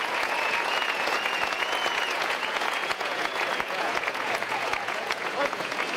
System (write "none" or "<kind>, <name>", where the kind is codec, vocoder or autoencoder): vocoder, Vocos